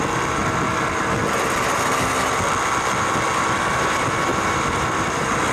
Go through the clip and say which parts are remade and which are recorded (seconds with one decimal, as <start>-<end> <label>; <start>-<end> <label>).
0.0-0.4 remade; 0.4-3.7 recorded; 3.7-5.5 remade